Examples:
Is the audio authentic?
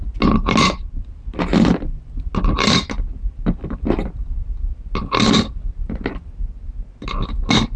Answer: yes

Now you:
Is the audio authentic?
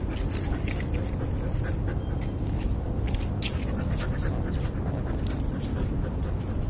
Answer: yes